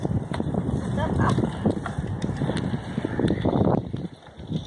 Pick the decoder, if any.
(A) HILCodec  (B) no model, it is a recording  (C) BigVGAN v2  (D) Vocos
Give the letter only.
B